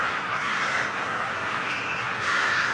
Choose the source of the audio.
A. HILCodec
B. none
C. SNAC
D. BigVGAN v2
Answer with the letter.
C